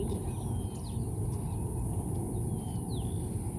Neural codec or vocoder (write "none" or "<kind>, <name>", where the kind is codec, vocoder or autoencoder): none